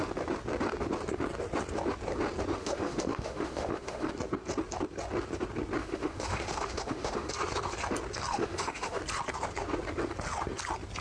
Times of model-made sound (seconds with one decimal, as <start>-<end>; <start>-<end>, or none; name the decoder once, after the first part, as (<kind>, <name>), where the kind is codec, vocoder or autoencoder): 2.6-4.1 (autoencoder, DAC-VAE); 5.8-7.3; 8.3-9.0

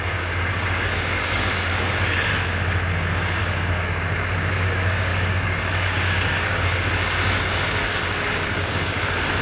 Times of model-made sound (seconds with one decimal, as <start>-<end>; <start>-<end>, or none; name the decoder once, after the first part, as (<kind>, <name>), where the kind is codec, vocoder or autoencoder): 0.0-2.3 (codec, DAC); 3.4-9.4

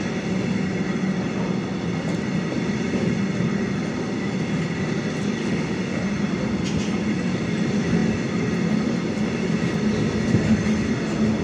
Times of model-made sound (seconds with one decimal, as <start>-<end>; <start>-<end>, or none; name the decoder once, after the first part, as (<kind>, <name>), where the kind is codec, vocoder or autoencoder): 5.4-6.0 (autoencoder, DAC-VAE)

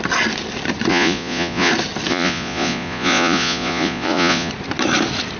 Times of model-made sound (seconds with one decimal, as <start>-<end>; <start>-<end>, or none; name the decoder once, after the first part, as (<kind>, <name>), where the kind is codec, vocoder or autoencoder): 0.9-1.7 (vocoder, Vocos); 2.1-4.5

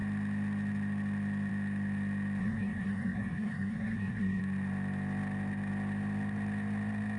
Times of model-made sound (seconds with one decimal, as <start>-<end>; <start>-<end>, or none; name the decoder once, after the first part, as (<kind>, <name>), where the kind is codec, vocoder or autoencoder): 2.4-4.4 (codec, SNAC)

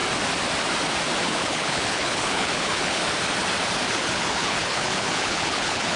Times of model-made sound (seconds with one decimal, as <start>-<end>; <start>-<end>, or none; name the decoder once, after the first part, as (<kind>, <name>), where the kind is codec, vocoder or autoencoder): 1.2-3.0 (codec, HILCodec); 3.9-6.0

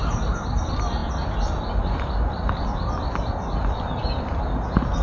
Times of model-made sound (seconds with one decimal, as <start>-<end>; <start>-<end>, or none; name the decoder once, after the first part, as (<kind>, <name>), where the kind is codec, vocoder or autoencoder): none